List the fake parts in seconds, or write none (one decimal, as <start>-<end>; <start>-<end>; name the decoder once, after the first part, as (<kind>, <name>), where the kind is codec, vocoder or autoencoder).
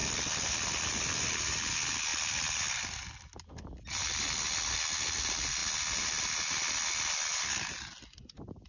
none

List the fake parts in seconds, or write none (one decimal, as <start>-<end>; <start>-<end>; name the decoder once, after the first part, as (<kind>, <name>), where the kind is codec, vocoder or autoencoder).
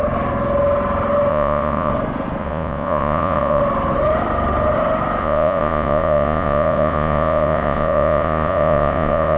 1.3-1.9 (vocoder, Vocos); 2.4-3.6; 5.2-9.4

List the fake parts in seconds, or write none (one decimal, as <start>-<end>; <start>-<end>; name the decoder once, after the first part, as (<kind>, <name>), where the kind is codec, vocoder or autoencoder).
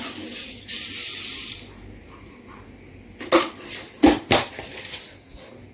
none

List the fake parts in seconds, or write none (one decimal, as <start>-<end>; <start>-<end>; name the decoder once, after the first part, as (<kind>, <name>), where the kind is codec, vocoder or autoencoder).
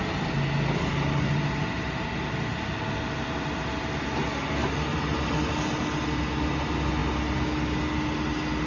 none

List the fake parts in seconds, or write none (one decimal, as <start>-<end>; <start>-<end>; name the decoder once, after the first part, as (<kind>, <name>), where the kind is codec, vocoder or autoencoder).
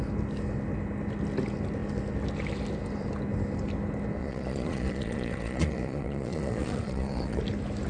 4.2-7.4 (vocoder, Vocos)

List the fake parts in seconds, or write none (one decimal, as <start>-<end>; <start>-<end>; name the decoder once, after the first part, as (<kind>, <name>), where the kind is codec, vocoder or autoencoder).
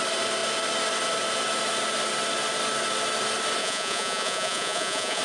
3.6-5.2 (vocoder, Vocos)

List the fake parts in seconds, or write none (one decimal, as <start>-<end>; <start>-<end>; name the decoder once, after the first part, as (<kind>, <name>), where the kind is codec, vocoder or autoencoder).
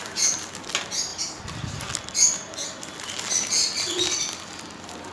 none